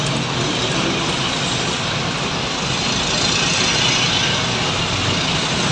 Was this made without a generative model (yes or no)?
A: yes